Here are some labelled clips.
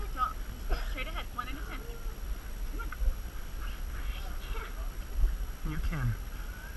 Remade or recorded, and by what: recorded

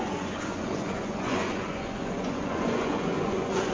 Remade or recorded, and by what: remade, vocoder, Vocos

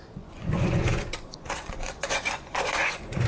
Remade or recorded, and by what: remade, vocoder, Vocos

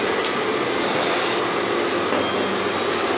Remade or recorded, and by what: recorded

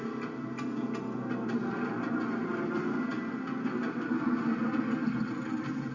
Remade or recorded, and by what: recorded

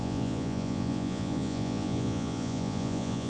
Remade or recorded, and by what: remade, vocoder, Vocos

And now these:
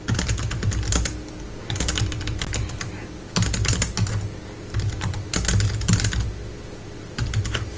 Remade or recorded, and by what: recorded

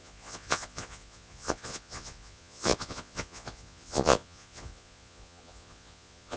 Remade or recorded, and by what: remade, vocoder, Vocos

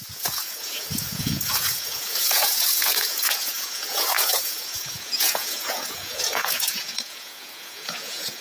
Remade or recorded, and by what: remade, vocoder, Vocos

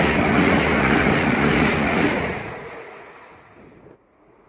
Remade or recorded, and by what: remade, vocoder, Vocos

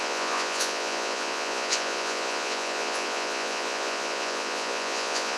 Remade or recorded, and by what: remade, vocoder, Vocos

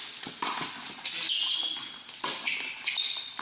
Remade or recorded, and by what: recorded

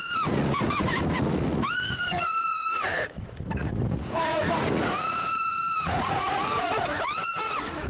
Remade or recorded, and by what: remade, vocoder, Vocos